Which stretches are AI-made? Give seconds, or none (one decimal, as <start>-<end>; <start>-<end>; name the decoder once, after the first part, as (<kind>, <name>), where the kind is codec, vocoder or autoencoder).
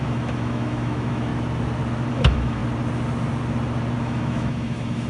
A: 0.0-1.3 (autoencoder, DAC-VAE); 2.1-2.6; 4.0-5.1